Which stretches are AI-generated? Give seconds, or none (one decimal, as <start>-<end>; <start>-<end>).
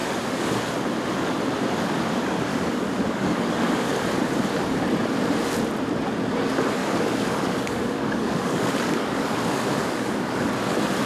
0.0-0.6; 2.5-4.0; 6.8-10.5